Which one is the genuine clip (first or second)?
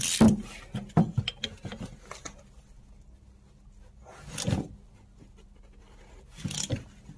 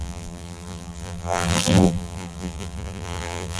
first